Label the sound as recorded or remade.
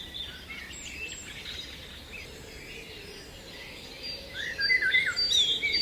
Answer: recorded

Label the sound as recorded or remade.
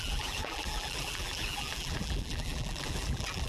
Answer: remade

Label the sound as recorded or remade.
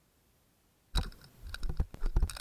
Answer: recorded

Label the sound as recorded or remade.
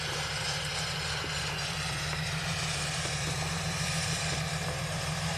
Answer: remade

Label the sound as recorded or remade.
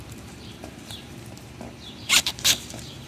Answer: remade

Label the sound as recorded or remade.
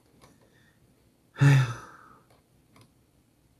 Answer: recorded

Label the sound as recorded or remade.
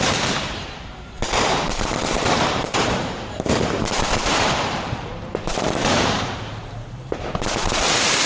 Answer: remade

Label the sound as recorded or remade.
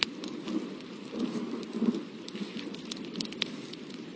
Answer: recorded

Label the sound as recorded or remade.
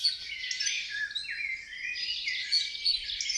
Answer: recorded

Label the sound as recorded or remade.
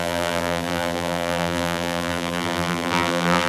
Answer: remade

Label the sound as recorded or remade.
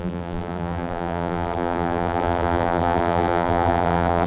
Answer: remade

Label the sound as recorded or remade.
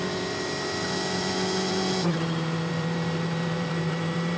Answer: remade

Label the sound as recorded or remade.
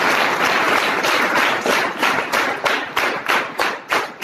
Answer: recorded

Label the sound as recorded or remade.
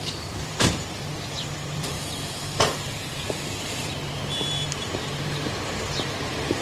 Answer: remade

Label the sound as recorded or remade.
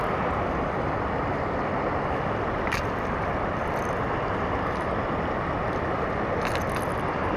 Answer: recorded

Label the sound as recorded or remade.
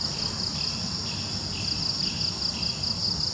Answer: recorded